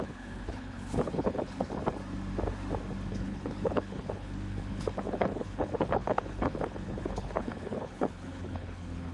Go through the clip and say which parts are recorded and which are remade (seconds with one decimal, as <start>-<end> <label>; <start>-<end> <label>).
0.0-1.8 remade; 1.8-3.1 recorded; 3.1-9.1 remade